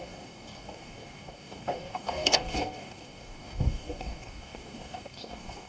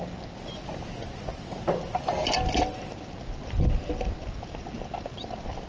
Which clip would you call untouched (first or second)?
second